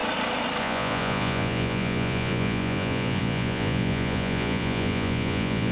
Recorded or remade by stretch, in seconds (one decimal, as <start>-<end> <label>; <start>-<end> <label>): 0.0-0.6 recorded; 0.6-5.7 remade